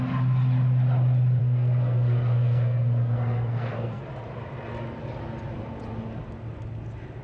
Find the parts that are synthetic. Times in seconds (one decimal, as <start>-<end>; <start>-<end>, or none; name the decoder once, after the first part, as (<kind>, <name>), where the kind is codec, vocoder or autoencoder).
1.4-4.0 (codec, SNAC)